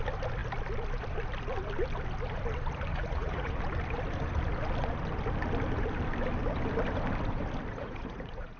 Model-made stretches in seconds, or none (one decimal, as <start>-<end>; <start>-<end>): 2.9-3.6; 7.7-8.6